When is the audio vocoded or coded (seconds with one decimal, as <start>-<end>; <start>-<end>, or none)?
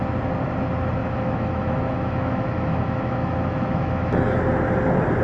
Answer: 1.0-4.1